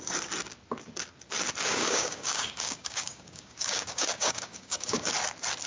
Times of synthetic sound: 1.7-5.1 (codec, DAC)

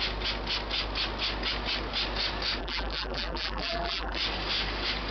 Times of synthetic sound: 2.6-4.2 (vocoder, BigVGAN v2)